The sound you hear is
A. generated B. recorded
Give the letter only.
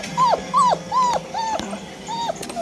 B